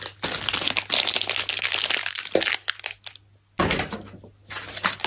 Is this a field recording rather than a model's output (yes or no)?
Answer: yes